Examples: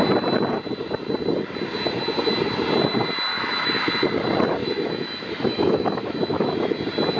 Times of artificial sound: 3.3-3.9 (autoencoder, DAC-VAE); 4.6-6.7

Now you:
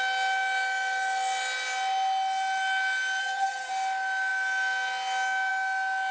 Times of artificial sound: 3.2-3.7 (vocoder, BigVGAN v2)

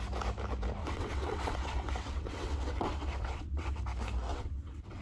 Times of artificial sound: 0.8-3.8 (vocoder, WaveNeXt); 4.3-5.0

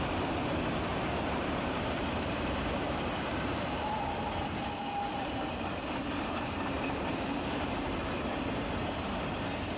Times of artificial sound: 0.9-4.1 (vocoder, BigVGAN v2); 5.1-8.0

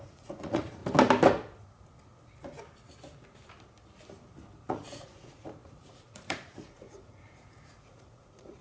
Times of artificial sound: 0.0-0.8 (vocoder, Vocos); 4.7-8.6

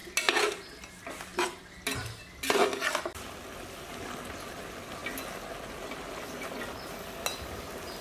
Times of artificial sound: none

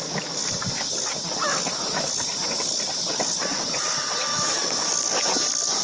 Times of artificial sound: 4.3-4.9 (autoencoder, DAC-VAE)

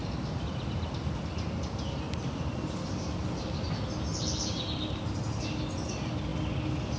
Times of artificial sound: none